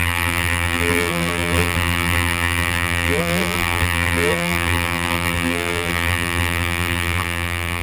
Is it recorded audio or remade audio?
remade